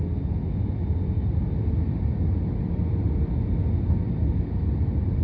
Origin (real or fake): real